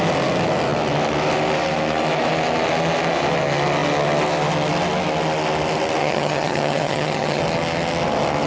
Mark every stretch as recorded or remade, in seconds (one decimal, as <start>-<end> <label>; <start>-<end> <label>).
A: 0.0-6.0 recorded; 6.0-7.4 remade; 7.4-8.5 recorded